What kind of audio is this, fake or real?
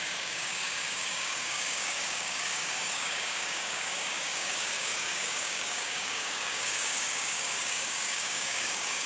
fake